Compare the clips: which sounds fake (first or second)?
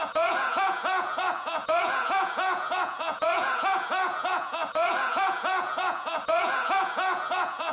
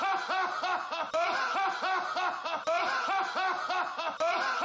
first